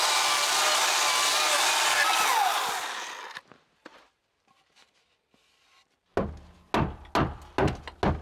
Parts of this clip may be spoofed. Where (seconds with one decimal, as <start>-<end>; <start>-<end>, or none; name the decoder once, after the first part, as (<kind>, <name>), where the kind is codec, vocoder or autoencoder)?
none